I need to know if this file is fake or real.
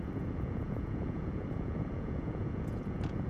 fake